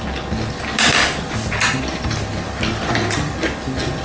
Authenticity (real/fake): real